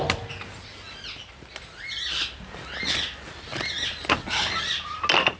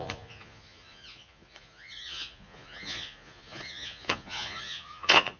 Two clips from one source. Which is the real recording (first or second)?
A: first